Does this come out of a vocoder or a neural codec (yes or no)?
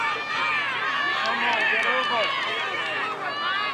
no